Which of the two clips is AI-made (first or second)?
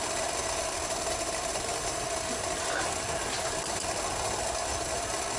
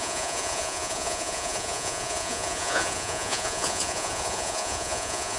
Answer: second